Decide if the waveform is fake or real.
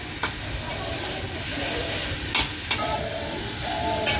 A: real